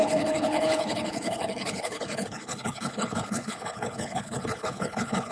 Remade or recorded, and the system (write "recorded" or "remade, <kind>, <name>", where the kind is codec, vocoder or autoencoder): remade, codec, HILCodec